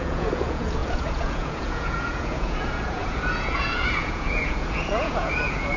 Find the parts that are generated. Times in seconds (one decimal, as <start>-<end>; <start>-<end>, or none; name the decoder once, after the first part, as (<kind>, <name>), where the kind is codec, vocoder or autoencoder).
0.0-5.8 (vocoder, Vocos)